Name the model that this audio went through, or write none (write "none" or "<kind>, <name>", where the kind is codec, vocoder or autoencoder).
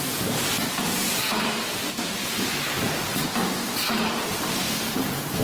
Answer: vocoder, BigVGAN v2